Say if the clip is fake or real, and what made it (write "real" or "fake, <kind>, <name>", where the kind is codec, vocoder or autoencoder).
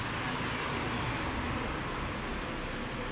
real